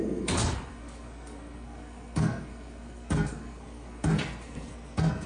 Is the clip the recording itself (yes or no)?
no